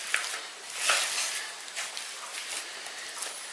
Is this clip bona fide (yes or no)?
yes